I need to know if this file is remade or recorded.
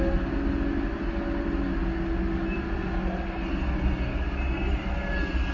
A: recorded